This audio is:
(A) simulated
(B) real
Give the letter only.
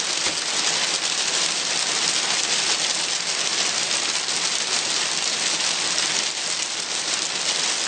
B